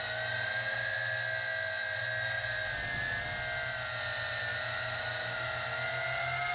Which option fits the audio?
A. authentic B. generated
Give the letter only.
A